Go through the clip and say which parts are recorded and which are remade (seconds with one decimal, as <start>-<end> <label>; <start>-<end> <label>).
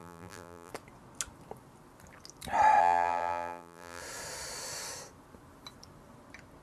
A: 0.0-0.7 remade; 0.7-2.8 recorded; 2.8-4.0 remade; 4.0-6.6 recorded